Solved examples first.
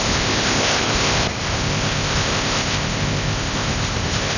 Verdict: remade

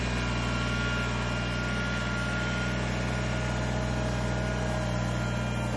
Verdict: recorded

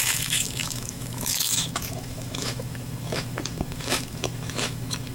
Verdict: remade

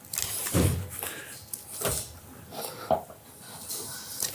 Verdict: recorded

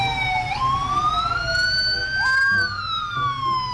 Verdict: recorded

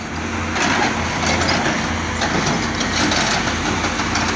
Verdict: recorded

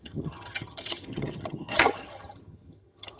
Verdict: remade